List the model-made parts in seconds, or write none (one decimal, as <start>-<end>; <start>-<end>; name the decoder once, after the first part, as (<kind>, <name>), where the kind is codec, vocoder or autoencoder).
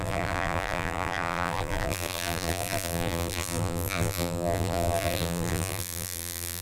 0.0-6.6 (vocoder, BigVGAN v2)